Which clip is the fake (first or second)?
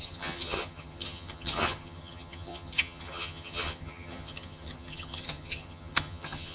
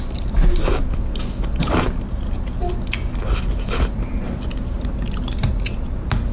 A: first